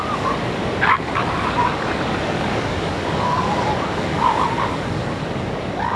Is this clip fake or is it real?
fake